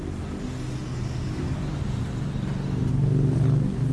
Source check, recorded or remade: recorded